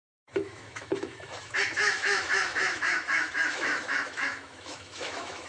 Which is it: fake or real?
fake